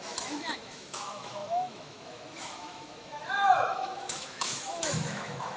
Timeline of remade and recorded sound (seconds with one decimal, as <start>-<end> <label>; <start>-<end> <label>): 0.0-5.6 remade